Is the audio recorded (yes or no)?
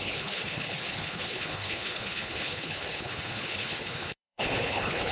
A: no